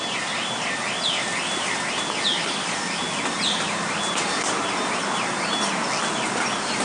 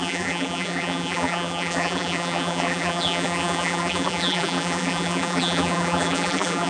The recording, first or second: first